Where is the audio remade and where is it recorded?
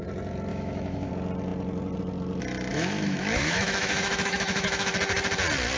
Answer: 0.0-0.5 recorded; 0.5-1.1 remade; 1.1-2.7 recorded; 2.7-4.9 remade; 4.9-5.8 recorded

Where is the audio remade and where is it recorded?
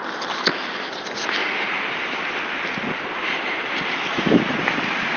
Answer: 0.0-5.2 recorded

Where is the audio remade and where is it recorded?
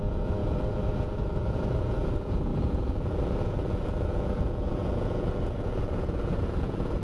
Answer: 0.0-7.0 remade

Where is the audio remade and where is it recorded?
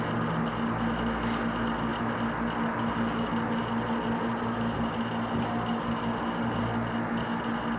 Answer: 0.0-7.8 recorded